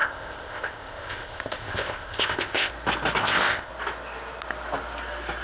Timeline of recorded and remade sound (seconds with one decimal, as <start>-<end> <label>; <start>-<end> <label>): 0.0-2.7 remade; 2.7-3.2 recorded; 3.2-3.7 remade; 3.7-5.4 recorded